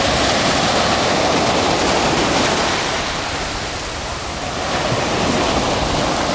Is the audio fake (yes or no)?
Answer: no